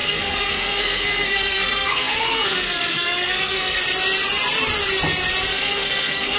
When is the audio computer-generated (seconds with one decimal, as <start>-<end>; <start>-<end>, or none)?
0.0-3.8; 5.5-6.4